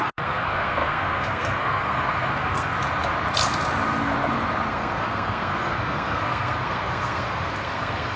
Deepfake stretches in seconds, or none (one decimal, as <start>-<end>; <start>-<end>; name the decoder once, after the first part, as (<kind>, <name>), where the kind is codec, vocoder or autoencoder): 0.0-2.7 (codec, SNAC); 4.7-8.2